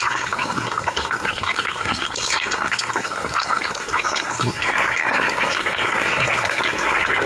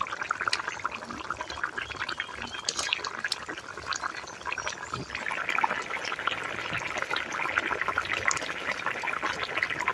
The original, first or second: second